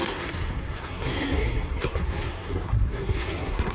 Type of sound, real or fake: fake